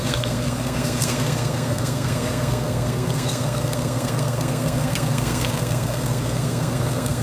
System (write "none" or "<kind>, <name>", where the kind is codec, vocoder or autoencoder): codec, SNAC